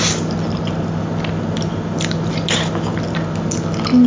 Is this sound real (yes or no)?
yes